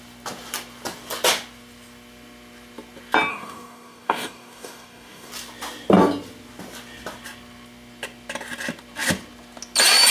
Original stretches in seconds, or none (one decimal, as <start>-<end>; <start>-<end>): 0.0-3.3; 5.3-10.1